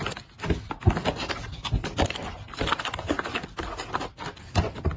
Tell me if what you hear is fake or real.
real